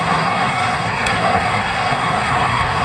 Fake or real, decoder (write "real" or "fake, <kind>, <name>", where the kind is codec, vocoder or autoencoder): fake, codec, SNAC